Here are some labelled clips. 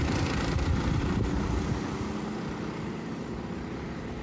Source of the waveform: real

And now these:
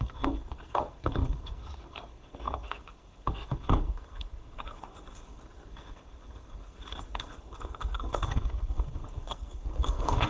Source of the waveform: fake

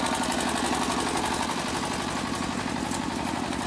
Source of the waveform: real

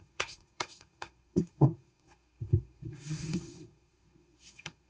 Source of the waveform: fake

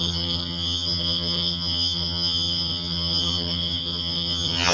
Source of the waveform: fake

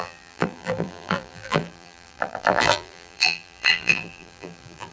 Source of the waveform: fake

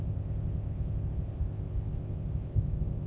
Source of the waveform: fake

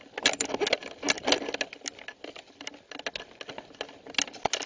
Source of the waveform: real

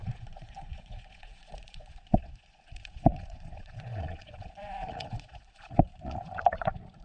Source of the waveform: fake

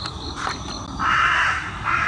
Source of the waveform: real